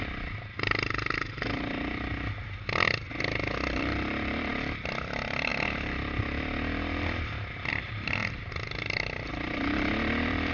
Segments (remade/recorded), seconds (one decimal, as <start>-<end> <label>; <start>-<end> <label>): 0.0-2.1 remade; 2.1-4.5 recorded; 4.5-5.5 remade; 5.5-7.7 recorded; 7.7-10.5 remade